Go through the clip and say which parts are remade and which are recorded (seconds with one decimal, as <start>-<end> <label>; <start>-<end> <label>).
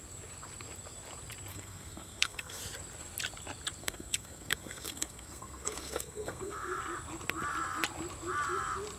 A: 0.0-1.5 recorded; 1.5-2.6 remade; 2.6-3.8 recorded; 3.8-6.8 remade; 6.8-9.0 recorded